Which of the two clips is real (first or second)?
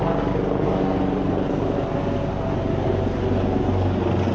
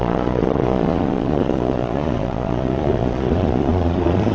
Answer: first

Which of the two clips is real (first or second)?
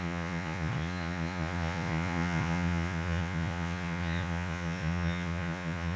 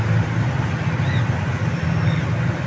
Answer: second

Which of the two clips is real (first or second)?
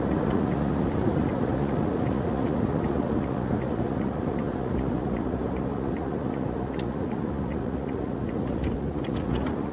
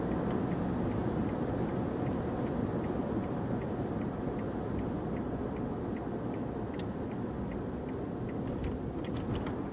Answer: second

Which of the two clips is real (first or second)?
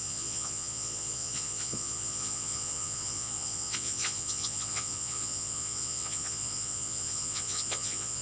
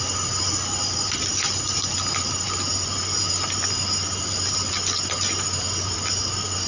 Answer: second